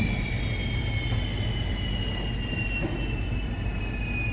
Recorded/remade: recorded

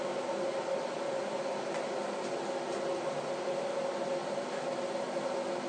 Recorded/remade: recorded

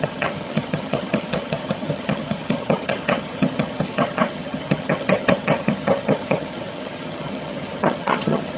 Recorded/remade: remade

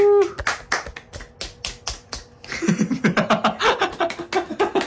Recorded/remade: recorded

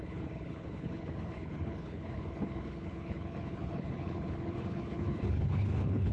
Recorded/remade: remade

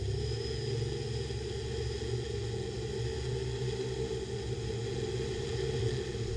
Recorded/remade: recorded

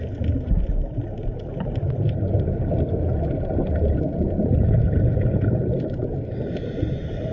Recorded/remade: recorded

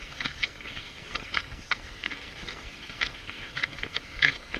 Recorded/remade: remade